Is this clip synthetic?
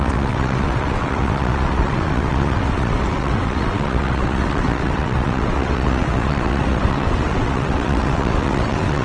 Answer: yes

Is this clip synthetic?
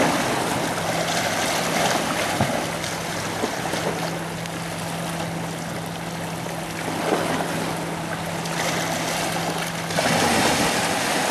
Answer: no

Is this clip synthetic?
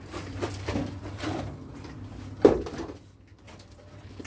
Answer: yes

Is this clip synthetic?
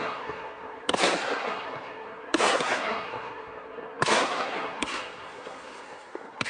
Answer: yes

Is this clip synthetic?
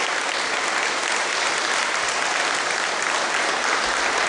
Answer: no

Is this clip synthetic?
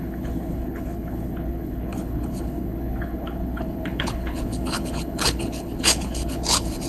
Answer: yes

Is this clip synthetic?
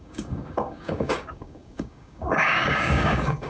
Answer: yes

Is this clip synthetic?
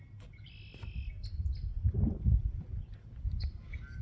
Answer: no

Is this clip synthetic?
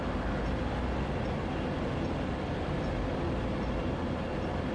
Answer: no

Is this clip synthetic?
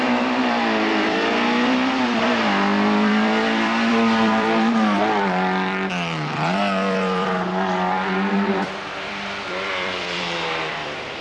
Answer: yes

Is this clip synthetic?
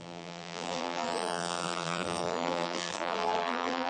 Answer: yes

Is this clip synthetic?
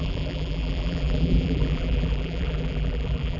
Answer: yes